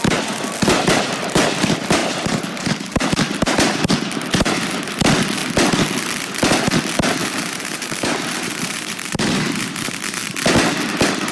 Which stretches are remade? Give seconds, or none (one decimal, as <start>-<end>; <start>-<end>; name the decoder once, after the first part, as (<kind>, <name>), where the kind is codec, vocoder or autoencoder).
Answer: 2.0-2.7 (vocoder, BigVGAN v2); 7.2-10.0